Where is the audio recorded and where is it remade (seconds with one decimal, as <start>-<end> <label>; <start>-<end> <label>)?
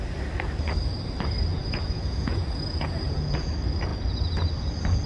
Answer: 0.0-1.5 recorded; 1.5-3.5 remade; 3.5-5.1 recorded